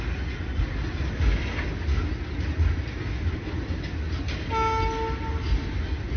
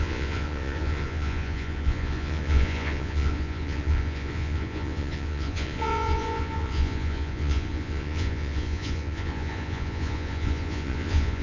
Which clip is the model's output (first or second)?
second